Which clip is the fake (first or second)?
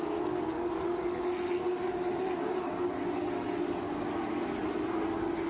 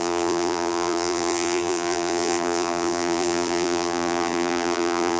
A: second